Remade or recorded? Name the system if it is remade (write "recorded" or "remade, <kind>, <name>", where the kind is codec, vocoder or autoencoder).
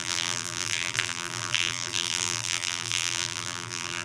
remade, vocoder, BigVGAN v2